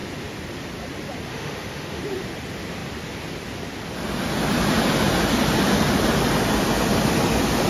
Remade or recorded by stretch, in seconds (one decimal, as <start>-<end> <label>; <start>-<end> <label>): 0.0-1.3 recorded; 1.3-2.0 remade; 2.0-7.7 recorded